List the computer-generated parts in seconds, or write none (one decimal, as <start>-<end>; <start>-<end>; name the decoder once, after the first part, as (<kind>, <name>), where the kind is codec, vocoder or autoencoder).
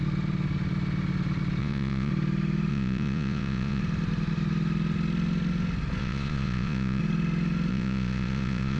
1.6-2.1 (vocoder, Vocos); 2.7-3.8; 6.0-7.0; 7.7-8.8